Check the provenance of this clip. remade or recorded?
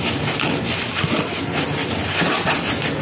recorded